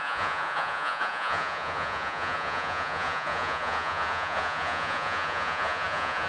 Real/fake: fake